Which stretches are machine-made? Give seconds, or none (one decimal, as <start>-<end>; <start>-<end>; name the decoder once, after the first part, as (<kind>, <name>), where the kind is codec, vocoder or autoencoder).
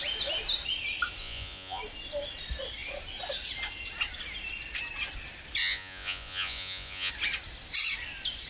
1.2-1.8 (vocoder, Vocos); 5.6-7.1